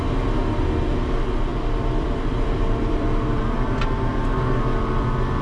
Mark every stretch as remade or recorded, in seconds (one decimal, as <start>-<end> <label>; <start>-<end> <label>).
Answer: 0.0-1.5 recorded; 1.5-3.4 remade; 3.4-5.4 recorded